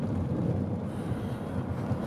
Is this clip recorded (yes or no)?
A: yes